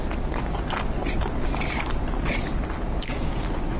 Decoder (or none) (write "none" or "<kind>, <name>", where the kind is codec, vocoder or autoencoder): none